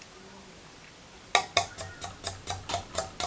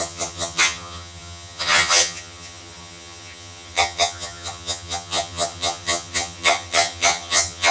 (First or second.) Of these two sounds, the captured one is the first